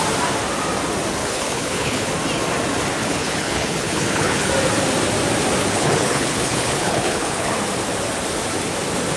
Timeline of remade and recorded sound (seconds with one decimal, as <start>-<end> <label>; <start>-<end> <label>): 0.0-1.2 recorded; 1.2-2.1 remade; 2.1-3.0 recorded; 3.0-4.5 remade; 4.5-5.6 recorded; 5.6-7.5 remade; 7.5-9.2 recorded

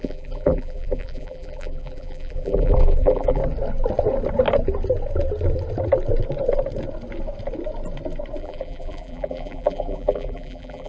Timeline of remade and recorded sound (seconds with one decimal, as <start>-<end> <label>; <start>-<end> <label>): 0.0-3.4 remade; 3.4-8.4 recorded; 8.4-10.9 remade

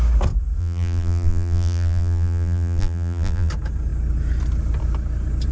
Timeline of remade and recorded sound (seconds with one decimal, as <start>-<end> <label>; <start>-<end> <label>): 0.0-0.6 recorded; 0.6-3.5 remade; 3.5-5.5 recorded

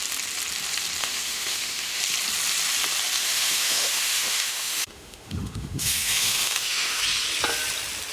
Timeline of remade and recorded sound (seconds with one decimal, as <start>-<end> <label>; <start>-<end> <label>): 0.0-1.0 recorded; 1.0-2.0 remade; 2.0-3.2 recorded; 3.2-7.0 remade; 7.0-8.1 recorded

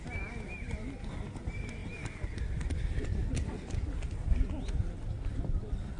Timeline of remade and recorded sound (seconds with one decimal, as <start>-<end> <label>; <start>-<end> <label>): 0.0-6.0 recorded

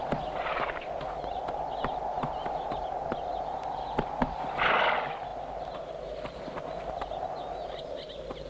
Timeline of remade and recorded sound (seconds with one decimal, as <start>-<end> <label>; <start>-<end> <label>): 0.0-8.5 recorded

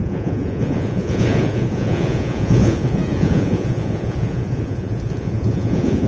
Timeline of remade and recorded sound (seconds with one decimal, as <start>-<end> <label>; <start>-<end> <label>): 0.0-6.1 remade

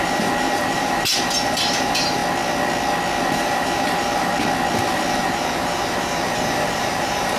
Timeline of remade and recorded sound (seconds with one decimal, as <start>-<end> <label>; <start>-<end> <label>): 0.0-2.2 remade; 2.2-3.2 recorded; 3.2-4.3 remade; 4.3-5.1 recorded; 5.1-7.4 remade